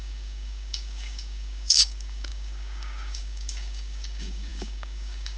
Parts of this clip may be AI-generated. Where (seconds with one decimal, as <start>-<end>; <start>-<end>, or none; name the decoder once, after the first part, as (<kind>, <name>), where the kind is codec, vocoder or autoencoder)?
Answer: 0.0-5.4 (codec, DAC)